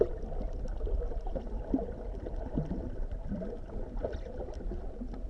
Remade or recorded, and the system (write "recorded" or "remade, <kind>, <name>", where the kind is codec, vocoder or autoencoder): recorded